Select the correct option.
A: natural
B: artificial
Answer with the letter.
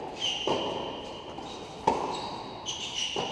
B